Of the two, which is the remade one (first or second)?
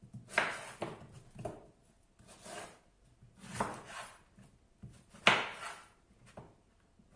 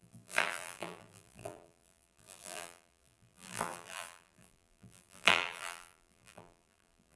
second